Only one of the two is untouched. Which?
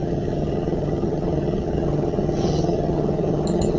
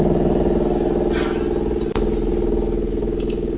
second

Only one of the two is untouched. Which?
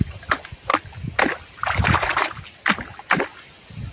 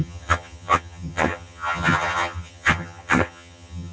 first